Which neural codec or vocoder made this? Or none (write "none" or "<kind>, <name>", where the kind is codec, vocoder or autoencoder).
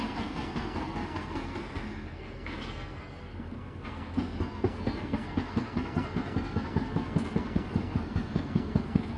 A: codec, SNAC